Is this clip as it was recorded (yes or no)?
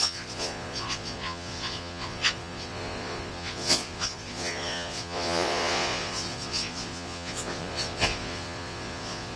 no